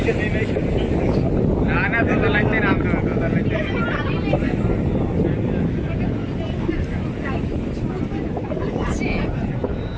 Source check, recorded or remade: recorded